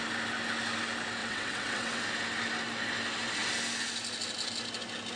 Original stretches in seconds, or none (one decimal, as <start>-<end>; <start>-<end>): 0.0-1.2; 2.0-5.2